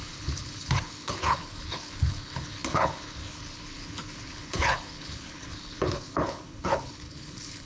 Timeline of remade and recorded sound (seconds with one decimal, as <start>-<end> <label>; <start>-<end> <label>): 0.0-7.7 remade